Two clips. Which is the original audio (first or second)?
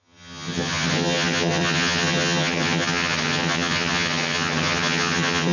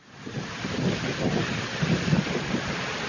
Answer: second